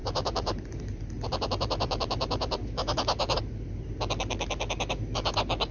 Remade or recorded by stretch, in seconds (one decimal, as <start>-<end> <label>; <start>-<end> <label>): 0.0-3.4 remade; 3.4-5.7 recorded